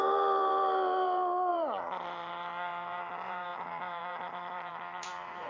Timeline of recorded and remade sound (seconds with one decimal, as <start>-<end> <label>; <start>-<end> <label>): 0.0-5.5 remade